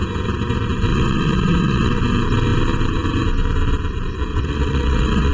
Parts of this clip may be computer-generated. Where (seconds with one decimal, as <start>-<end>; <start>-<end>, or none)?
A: 0.9-2.0; 4.3-5.3